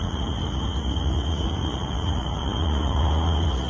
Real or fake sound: fake